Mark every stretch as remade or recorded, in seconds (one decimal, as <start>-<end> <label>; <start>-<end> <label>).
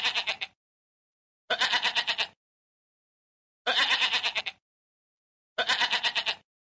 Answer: 0.0-6.7 recorded